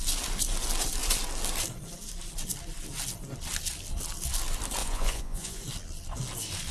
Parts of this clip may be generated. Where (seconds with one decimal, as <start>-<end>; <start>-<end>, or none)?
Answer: 4.8-5.6